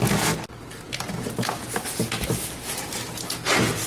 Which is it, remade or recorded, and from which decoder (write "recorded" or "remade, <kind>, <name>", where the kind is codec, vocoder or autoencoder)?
recorded